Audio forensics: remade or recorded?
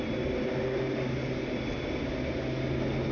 recorded